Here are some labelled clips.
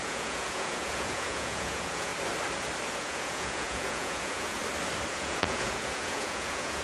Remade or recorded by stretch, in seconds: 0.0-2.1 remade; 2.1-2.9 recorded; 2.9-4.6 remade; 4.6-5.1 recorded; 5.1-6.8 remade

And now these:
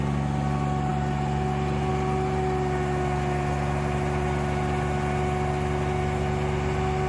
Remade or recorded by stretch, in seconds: 0.0-7.1 recorded

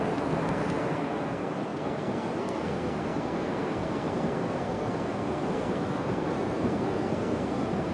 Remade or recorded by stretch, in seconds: 0.0-7.9 remade

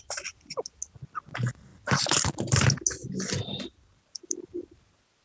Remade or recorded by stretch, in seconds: 0.0-1.7 recorded; 1.7-2.5 remade; 2.5-3.0 recorded; 3.0-4.4 remade; 4.4-5.2 recorded

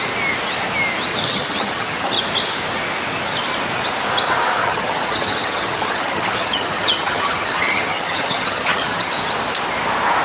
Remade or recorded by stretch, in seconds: 0.0-1.1 recorded; 1.1-2.2 remade; 2.2-4.6 recorded; 4.6-9.1 remade; 9.1-10.2 recorded